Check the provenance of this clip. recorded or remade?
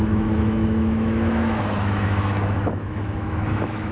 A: remade